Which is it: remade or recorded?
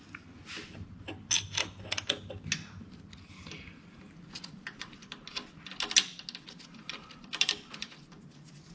recorded